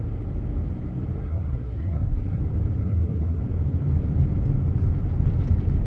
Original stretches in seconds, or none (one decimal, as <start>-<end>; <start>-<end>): 0.0-1.2; 2.4-2.8; 3.4-5.9